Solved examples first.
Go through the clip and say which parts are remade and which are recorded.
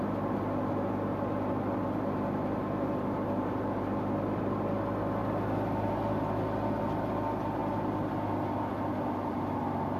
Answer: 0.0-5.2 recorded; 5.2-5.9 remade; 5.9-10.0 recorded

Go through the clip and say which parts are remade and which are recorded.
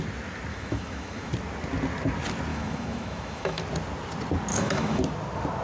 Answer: 0.0-0.5 recorded; 0.5-1.3 remade; 1.3-2.5 recorded; 2.5-3.6 remade; 3.6-4.5 recorded; 4.5-5.0 remade; 5.0-5.6 recorded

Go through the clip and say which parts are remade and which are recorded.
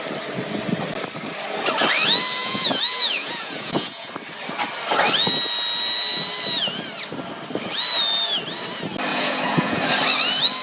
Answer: 0.0-2.4 recorded; 2.4-4.1 remade; 4.1-9.1 recorded; 9.1-9.8 remade; 9.8-10.6 recorded